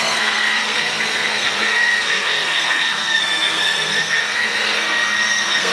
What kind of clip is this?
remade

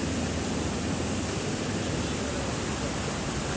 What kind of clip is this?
recorded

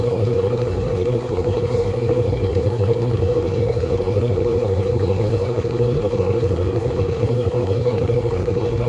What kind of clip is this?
remade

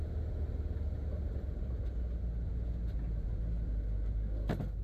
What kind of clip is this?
recorded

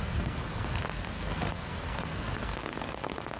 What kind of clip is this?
remade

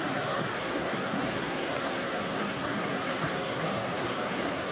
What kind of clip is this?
remade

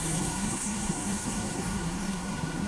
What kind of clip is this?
remade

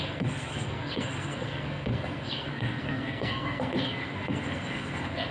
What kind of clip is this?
remade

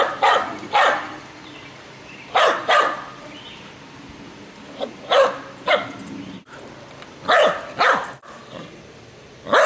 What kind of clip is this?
recorded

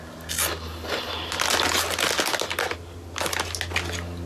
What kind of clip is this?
recorded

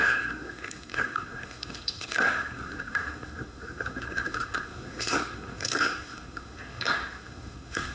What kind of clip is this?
remade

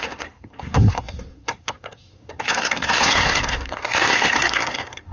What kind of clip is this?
remade